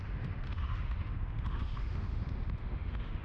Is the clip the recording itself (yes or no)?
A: no